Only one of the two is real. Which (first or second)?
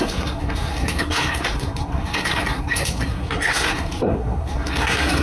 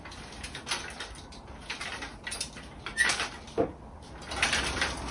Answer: second